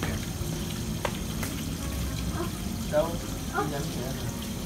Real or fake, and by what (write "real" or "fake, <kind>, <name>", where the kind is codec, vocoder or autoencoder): real